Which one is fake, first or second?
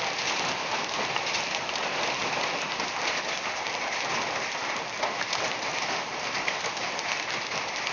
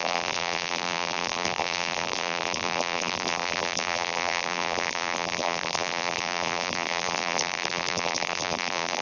second